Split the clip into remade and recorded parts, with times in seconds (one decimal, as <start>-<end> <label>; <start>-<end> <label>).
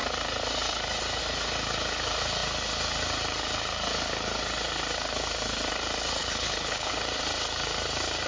0.0-6.2 recorded; 6.2-6.9 remade; 6.9-8.3 recorded